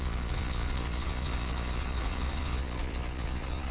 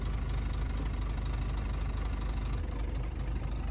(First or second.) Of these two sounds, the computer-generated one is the first